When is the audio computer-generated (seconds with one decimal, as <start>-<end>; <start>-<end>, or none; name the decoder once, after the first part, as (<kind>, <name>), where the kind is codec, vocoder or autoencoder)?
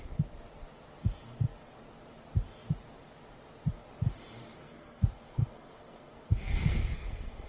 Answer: 4.6-7.5 (codec, SNAC)